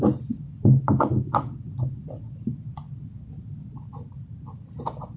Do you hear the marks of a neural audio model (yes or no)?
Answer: yes